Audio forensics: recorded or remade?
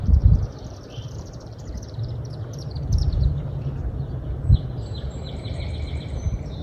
remade